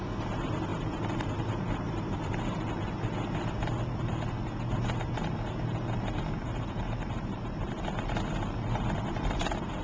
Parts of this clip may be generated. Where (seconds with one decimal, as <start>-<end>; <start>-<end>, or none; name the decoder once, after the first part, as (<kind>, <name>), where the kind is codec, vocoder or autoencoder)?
0.7-2.7 (vocoder, BigVGAN v2)